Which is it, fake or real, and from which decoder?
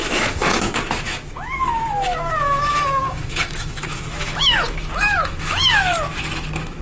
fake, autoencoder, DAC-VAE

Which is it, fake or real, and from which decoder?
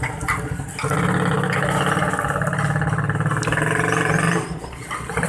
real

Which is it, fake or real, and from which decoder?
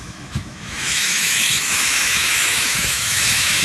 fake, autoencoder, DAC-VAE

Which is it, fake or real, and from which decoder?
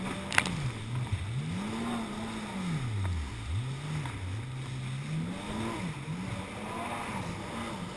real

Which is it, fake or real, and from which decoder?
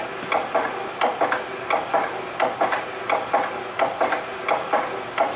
real